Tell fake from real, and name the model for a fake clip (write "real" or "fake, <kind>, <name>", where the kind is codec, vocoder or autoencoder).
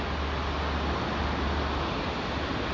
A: real